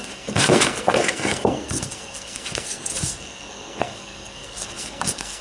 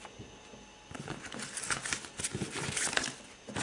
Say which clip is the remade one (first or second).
first